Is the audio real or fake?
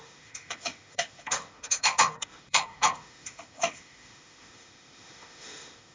fake